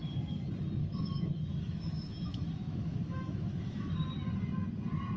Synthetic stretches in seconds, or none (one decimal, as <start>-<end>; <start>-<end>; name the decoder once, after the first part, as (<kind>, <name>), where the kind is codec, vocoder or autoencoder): 0.8-3.9 (autoencoder, DAC-VAE)